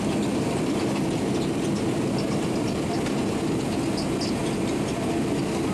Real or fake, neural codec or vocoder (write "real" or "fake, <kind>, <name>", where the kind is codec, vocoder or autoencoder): real